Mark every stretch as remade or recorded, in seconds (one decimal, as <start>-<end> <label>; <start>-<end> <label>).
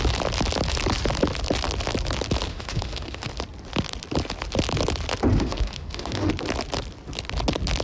0.0-2.5 recorded; 2.5-3.3 remade; 3.3-5.3 recorded; 5.3-6.3 remade; 6.3-7.8 recorded